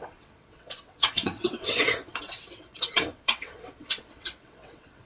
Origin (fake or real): fake